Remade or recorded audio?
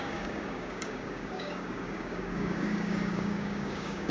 remade